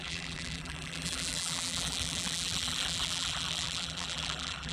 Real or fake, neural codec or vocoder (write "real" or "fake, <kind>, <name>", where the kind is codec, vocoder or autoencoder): fake, vocoder, BigVGAN v2